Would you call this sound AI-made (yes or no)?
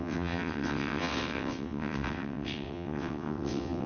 yes